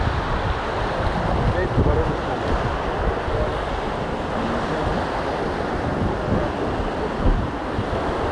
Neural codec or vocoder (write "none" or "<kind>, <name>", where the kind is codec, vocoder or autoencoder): none